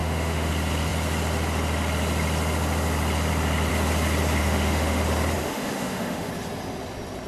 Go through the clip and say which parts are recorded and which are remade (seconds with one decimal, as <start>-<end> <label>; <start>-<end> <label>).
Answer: 0.0-0.5 remade; 0.5-4.4 recorded; 4.4-5.0 remade; 5.0-5.4 recorded; 5.4-6.3 remade; 6.3-7.3 recorded